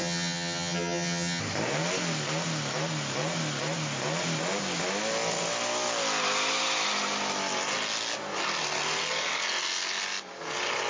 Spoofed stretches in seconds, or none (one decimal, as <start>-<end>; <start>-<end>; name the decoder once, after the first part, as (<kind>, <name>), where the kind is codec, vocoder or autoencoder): 0.0-1.4 (vocoder, HiFi-GAN)